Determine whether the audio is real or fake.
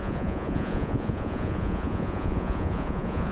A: fake